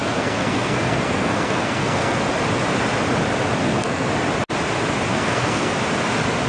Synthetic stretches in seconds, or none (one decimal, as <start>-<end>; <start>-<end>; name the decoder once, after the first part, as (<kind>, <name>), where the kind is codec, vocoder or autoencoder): 0.0-2.2 (codec, SNAC); 3.6-4.1; 5.1-5.8